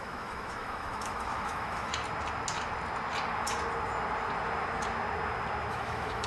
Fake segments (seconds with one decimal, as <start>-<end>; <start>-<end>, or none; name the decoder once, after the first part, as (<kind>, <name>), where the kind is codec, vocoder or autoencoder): 0.0-1.9 (autoencoder, DAC-VAE); 5.7-6.3